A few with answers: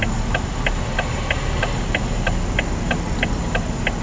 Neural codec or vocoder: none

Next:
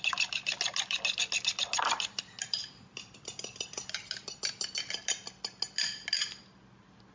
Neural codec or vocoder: none